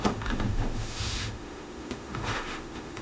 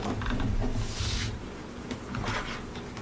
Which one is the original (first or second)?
second